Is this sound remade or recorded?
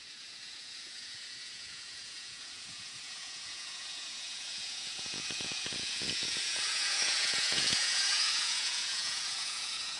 remade